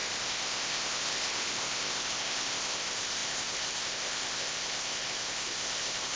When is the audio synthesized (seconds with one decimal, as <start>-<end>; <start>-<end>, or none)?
0.0-6.2